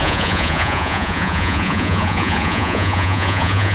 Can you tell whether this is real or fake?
fake